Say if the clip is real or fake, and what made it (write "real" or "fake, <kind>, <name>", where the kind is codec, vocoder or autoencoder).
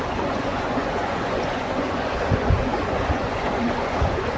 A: fake, vocoder, Vocos